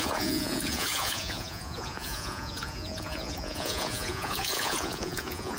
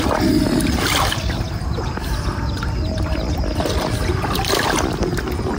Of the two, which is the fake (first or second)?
first